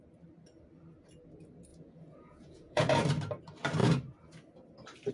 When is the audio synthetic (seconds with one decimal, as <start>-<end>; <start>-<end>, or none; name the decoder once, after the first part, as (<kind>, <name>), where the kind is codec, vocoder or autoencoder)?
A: 1.7-3.0 (vocoder, Vocos)